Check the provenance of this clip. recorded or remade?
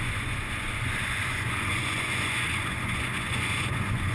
remade